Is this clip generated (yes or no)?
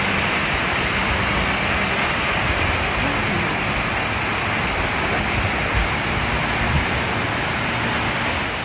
no